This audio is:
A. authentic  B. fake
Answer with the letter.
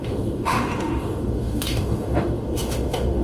B